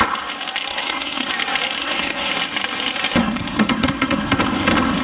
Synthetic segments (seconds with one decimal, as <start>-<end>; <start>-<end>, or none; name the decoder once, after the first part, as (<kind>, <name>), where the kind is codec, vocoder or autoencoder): 0.7-1.3 (codec, SNAC); 1.8-2.3; 3.2-4.4